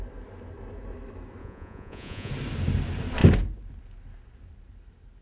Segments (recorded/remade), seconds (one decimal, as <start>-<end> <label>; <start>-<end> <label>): 0.0-1.4 recorded; 1.4-2.3 remade; 2.3-5.2 recorded